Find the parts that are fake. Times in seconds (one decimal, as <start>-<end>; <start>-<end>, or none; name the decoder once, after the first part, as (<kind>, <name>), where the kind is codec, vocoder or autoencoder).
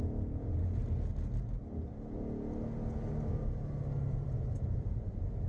0.0-0.8 (vocoder, Vocos); 4.1-5.5